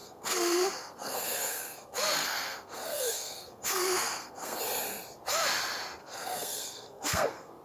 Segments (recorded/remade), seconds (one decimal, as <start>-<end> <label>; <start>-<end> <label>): 0.0-4.6 remade; 4.6-6.0 recorded; 6.0-7.6 remade